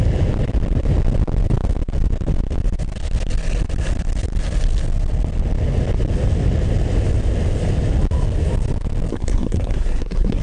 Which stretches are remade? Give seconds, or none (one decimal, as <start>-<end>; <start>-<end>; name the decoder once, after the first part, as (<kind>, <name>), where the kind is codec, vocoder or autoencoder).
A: 9.1-10.4 (codec, SNAC)